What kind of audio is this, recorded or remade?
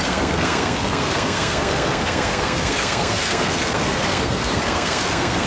remade